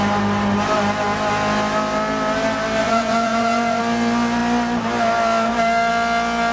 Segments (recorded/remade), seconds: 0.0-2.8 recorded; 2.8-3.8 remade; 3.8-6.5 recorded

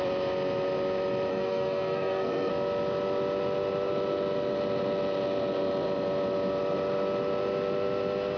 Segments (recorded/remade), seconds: 0.0-1.3 recorded; 1.3-2.5 remade; 2.5-8.4 recorded

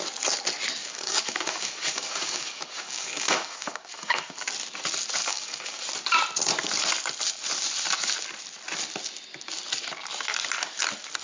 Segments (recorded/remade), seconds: 0.0-0.8 recorded; 0.8-4.5 remade; 4.5-5.2 recorded; 5.2-5.8 remade; 5.8-11.2 recorded

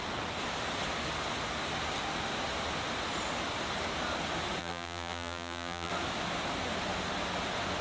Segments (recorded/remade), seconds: 0.0-4.6 recorded; 4.6-5.9 remade; 5.9-7.8 recorded

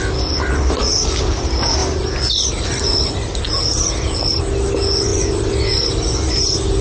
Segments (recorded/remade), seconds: 0.0-6.8 recorded